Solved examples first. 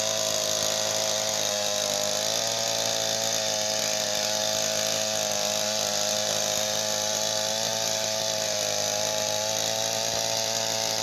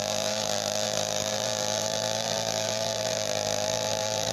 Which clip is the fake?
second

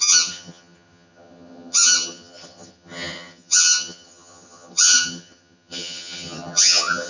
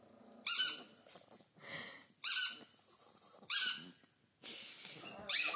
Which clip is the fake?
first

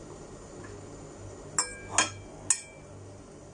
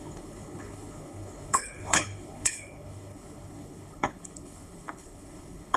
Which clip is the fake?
second